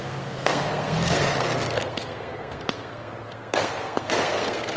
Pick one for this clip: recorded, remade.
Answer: remade